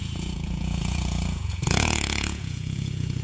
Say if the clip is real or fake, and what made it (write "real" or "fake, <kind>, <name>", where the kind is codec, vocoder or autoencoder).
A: fake, vocoder, Vocos